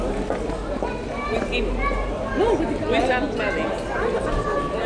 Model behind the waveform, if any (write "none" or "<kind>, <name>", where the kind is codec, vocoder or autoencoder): none